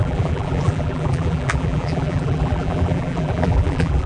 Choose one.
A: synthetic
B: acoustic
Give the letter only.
A